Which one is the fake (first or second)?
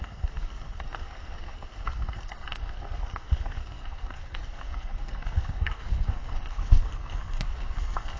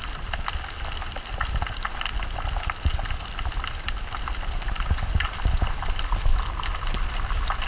first